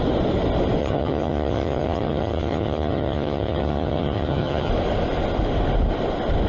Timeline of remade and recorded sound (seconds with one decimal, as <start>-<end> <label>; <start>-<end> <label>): 0.0-0.8 recorded; 0.8-4.7 remade; 4.7-6.5 recorded